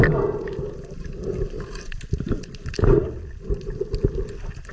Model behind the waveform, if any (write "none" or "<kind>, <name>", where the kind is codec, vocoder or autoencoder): none